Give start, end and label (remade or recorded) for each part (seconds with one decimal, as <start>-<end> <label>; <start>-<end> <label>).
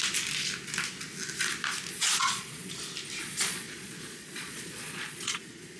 0.0-1.9 recorded; 1.9-2.7 remade; 2.7-3.2 recorded; 3.2-5.8 remade